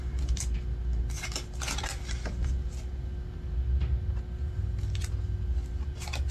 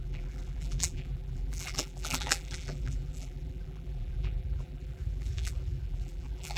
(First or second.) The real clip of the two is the first